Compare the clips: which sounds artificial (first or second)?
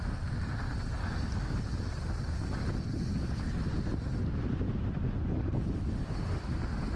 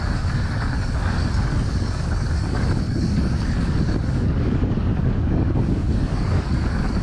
second